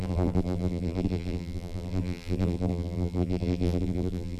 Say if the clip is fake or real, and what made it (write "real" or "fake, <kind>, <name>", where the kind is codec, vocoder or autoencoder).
fake, vocoder, BigVGAN v2